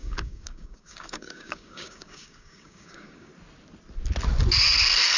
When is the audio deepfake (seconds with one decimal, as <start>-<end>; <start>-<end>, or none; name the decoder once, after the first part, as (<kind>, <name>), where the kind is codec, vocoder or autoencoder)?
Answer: 0.0-3.3 (codec, DAC)